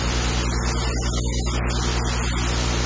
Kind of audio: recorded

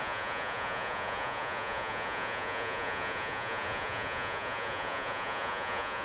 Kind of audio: remade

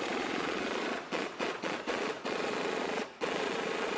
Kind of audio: remade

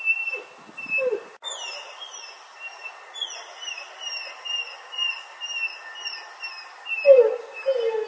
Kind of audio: recorded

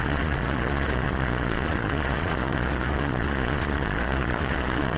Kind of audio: remade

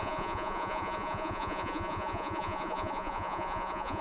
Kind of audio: remade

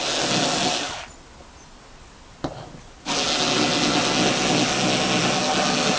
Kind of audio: recorded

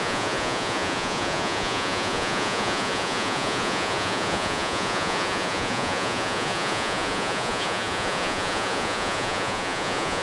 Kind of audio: remade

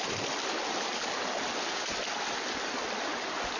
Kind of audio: recorded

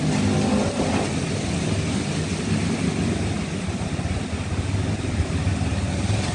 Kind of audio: recorded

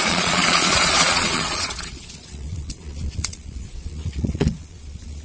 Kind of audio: remade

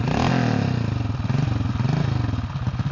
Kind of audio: recorded